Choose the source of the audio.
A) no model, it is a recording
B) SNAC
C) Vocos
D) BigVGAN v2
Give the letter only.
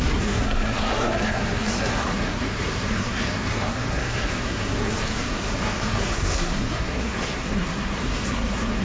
B